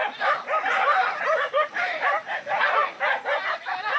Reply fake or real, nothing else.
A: fake